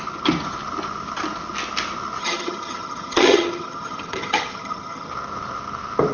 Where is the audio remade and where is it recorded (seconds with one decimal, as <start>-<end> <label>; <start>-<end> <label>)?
0.0-2.2 recorded; 2.2-5.1 remade; 5.1-6.1 recorded